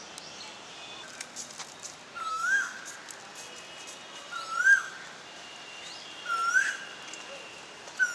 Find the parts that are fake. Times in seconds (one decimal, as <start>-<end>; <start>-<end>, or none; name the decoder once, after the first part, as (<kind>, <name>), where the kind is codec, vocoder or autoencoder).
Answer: 2.3-2.8 (autoencoder, DAC-VAE)